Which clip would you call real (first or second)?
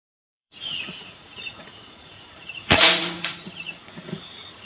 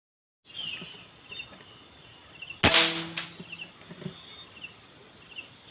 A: second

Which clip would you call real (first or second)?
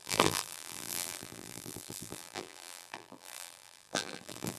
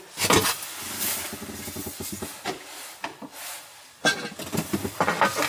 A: second